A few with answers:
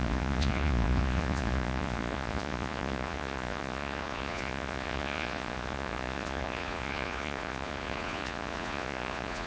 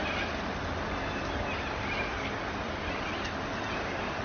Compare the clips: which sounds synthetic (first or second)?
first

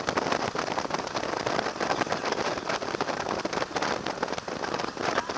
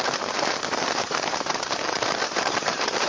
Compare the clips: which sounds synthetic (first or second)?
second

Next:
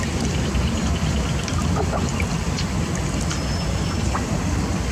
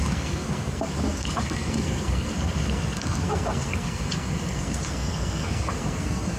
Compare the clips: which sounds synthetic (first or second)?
second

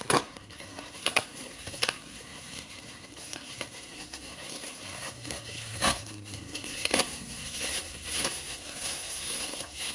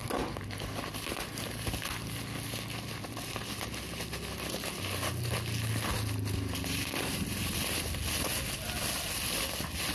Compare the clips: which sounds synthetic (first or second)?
first